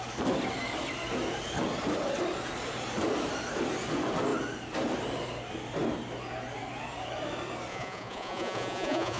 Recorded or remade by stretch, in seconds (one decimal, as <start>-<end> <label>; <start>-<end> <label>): 0.0-7.7 recorded; 7.7-9.2 remade

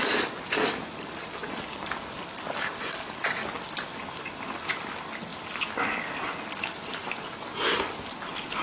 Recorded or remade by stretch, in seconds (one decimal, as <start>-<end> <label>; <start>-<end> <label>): 0.0-8.6 recorded

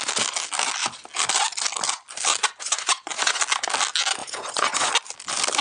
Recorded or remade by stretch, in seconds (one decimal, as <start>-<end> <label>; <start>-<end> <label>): 0.0-2.4 recorded; 2.4-3.4 remade; 3.4-4.2 recorded; 4.2-4.9 remade; 4.9-5.6 recorded

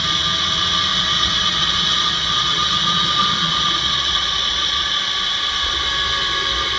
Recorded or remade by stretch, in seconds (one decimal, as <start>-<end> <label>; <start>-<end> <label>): 0.0-0.9 recorded; 0.9-5.0 remade; 5.0-6.8 recorded